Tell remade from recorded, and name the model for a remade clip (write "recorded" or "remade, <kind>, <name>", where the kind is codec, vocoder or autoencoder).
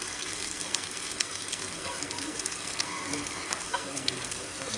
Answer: remade, codec, SNAC